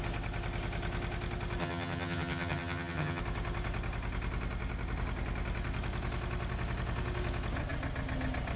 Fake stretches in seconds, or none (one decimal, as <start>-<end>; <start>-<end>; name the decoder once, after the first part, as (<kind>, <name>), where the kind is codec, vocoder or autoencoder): 1.6-3.2 (vocoder, HiFi-GAN)